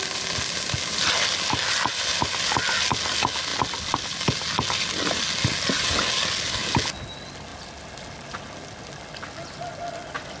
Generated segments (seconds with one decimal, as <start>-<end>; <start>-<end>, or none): none